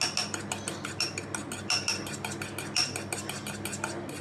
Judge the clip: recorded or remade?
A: recorded